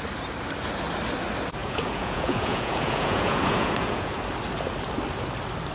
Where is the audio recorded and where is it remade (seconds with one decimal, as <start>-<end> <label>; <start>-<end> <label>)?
0.0-1.6 recorded; 1.6-4.2 remade; 4.2-5.7 recorded